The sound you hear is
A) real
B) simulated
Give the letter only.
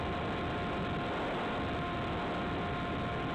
A